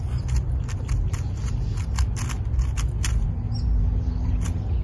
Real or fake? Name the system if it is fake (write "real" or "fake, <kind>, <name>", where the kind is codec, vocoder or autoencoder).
real